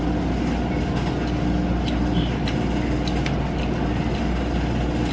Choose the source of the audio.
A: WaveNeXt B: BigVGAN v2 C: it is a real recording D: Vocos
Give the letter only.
C